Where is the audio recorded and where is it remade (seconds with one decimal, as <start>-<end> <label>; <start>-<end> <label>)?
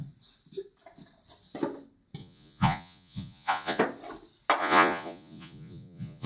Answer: 0.0-2.2 recorded; 2.2-3.8 remade; 3.8-4.6 recorded; 4.6-6.3 remade